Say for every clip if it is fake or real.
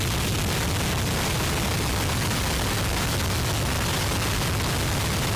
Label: real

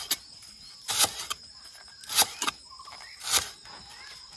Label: real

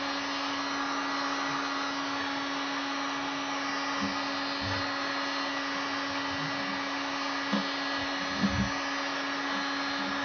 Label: real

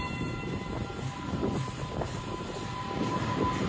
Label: real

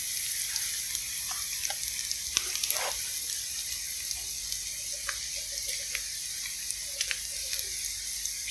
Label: real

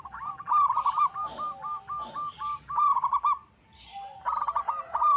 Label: real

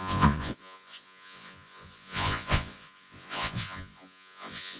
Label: fake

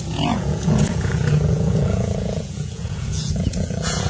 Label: fake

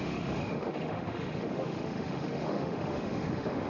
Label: fake